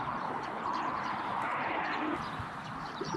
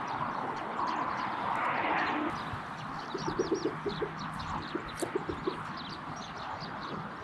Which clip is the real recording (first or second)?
second